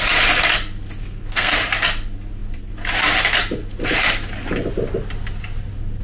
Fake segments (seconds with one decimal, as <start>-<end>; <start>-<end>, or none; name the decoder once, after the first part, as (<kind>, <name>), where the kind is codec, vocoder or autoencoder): 1.0-1.5 (codec, SNAC)